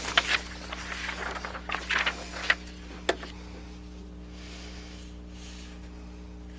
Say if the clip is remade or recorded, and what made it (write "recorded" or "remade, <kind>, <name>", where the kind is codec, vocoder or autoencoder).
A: recorded